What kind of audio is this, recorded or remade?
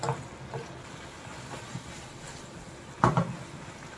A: recorded